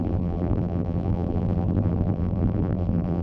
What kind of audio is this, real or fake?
fake